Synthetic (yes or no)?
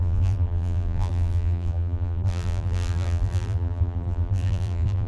yes